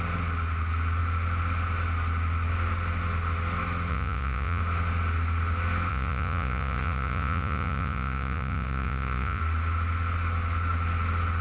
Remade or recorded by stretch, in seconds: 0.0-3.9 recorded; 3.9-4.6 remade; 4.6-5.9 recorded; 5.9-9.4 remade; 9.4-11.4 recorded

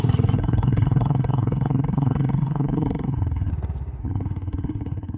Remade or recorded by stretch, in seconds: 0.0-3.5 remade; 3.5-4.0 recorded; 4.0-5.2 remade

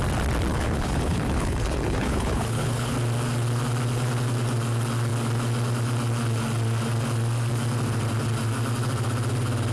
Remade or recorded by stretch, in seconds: 0.0-0.5 recorded; 0.5-2.9 remade; 2.9-9.7 recorded

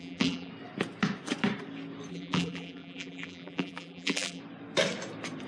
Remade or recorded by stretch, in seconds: 0.0-0.5 remade; 0.5-2.1 recorded; 2.1-4.4 remade; 4.4-5.5 recorded

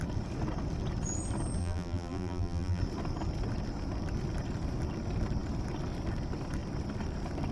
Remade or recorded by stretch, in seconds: 0.0-1.6 recorded; 1.6-2.8 remade; 2.8-7.5 recorded